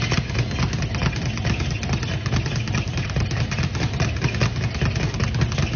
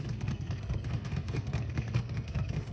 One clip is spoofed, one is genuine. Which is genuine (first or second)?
first